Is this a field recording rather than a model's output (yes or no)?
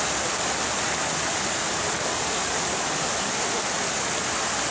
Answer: yes